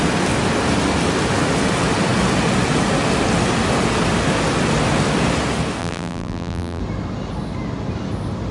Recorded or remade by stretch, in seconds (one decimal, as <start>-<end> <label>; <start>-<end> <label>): 0.0-5.8 recorded; 5.8-6.8 remade; 6.8-8.5 recorded